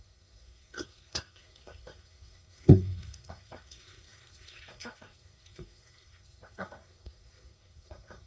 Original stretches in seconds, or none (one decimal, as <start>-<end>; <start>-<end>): none